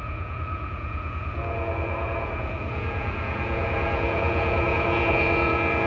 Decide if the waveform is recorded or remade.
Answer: remade